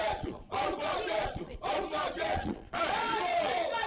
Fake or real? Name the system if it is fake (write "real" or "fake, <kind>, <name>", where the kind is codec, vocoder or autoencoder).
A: fake, vocoder, Vocos